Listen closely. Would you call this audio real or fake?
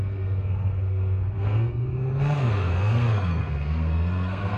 fake